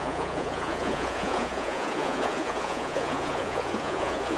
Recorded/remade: remade